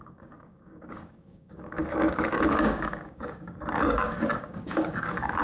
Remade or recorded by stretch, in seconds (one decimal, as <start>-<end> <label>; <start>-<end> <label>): 0.0-5.4 remade